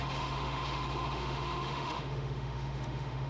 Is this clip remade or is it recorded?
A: remade